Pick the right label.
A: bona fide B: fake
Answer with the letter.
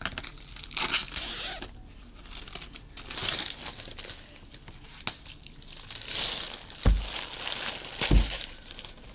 A